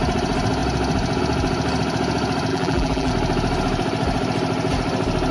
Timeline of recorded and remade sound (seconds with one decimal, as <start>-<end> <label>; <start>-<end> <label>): 0.0-2.5 recorded; 2.5-3.1 remade; 3.1-5.3 recorded